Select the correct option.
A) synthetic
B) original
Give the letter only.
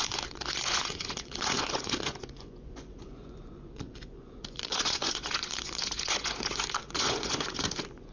A